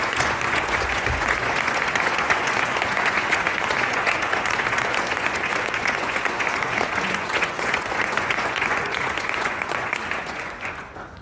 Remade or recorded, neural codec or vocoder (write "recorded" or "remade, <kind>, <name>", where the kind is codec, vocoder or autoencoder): remade, vocoder, Vocos